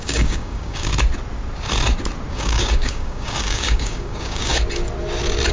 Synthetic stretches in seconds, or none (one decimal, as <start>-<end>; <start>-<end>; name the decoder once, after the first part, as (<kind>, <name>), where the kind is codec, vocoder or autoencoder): 0.0-0.9 (codec, DAC); 2.3-4.5